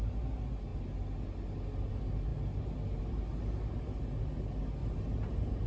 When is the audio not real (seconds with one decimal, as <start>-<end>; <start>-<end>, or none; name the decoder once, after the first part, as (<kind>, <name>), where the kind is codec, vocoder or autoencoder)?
4.8-5.7 (vocoder, BigVGAN v2)